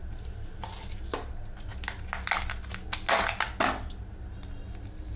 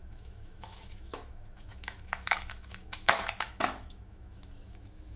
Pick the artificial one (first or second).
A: second